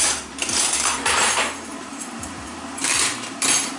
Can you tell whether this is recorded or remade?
remade